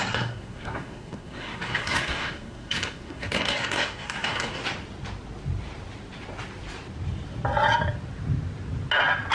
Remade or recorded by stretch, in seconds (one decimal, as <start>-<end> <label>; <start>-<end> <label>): 0.0-4.6 remade; 4.6-9.3 recorded